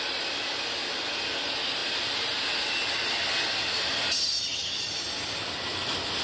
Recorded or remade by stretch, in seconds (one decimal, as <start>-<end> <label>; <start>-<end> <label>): 0.0-1.8 recorded; 1.8-3.2 remade; 3.2-6.2 recorded